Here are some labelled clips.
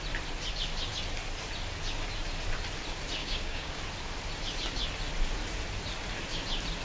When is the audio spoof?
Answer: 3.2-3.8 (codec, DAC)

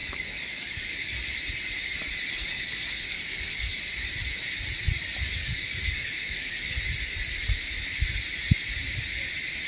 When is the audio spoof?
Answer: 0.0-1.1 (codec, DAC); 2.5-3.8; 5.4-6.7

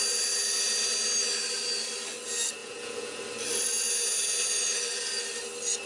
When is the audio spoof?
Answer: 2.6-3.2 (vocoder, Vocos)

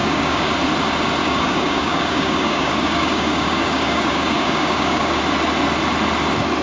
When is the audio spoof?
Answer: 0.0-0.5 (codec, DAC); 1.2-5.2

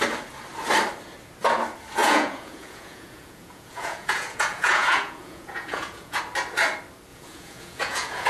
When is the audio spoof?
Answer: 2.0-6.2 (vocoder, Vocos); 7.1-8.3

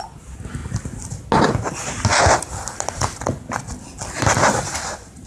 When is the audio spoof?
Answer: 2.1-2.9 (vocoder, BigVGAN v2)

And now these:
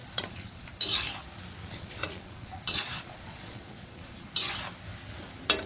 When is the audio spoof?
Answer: 0.0-0.7 (vocoder, Vocos); 1.6-4.3